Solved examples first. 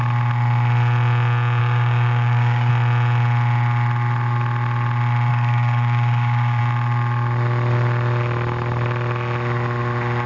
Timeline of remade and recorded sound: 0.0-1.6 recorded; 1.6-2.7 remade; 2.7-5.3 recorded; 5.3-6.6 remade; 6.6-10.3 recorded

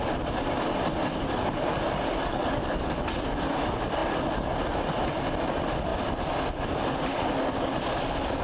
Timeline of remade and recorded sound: 0.0-2.3 recorded; 2.3-3.0 remade; 3.0-7.1 recorded; 7.1-7.7 remade; 7.7-8.4 recorded

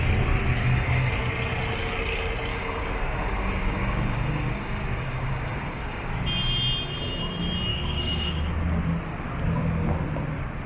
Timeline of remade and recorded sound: 0.0-0.6 recorded; 0.6-1.1 remade; 1.1-2.5 recorded; 2.5-6.1 remade; 6.1-7.7 recorded; 7.7-8.6 remade; 8.6-10.7 recorded

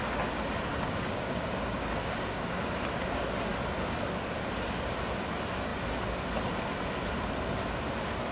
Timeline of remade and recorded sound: 0.0-0.7 recorded; 0.7-2.6 remade; 2.6-8.3 recorded

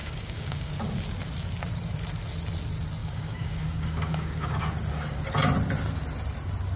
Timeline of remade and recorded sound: 0.0-0.7 remade; 0.7-3.0 recorded; 3.0-4.6 remade; 4.6-6.8 recorded

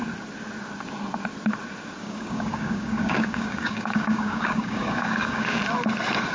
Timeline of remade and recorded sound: 0.0-2.0 recorded; 2.0-5.6 remade; 5.6-6.3 recorded

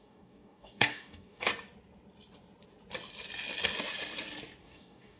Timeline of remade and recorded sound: 0.0-1.5 remade; 1.5-4.6 recorded; 4.6-5.2 remade

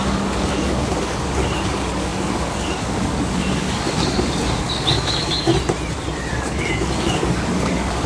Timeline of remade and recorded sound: 0.0-5.5 remade; 5.5-6.3 recorded; 6.3-8.1 remade